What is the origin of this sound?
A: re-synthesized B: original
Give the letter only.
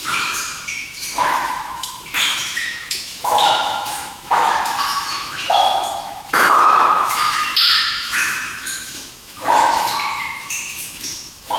A